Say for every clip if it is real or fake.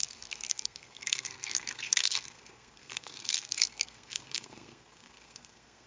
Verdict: fake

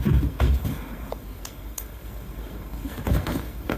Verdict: fake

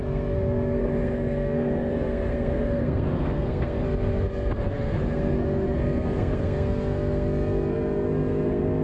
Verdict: fake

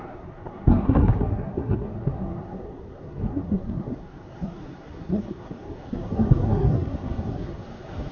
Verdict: fake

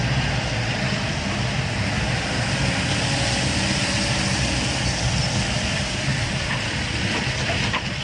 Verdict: real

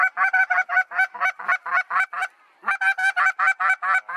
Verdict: real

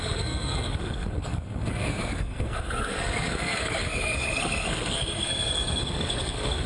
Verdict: fake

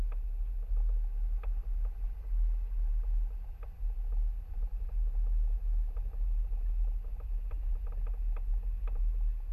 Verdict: real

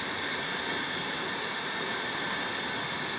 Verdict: real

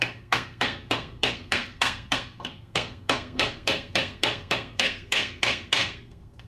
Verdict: fake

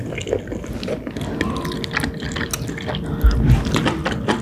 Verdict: real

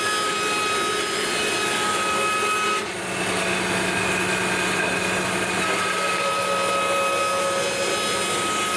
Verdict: real